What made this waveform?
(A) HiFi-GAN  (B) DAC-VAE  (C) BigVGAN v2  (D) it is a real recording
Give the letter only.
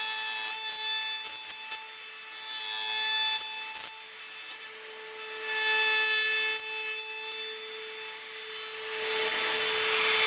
D